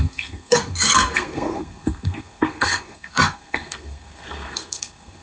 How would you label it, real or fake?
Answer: fake